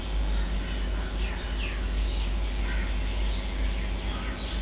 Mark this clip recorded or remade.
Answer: recorded